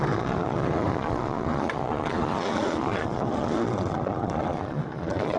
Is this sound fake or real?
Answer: fake